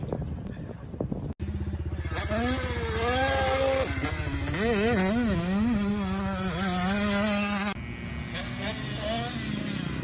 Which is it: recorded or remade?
recorded